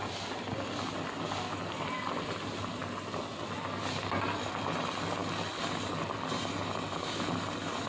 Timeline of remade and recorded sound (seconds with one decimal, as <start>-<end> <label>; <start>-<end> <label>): 0.0-7.9 recorded